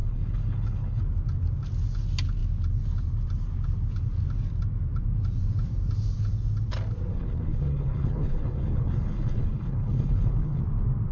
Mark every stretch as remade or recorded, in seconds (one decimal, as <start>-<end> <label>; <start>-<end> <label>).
0.0-1.0 remade; 1.0-7.1 recorded; 7.1-10.6 remade; 10.6-11.1 recorded